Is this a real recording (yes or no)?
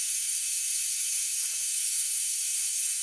no